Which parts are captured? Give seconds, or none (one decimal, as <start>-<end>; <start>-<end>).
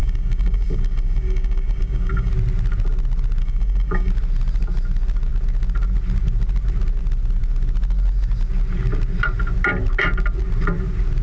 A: 2.3-3.4; 4.1-11.2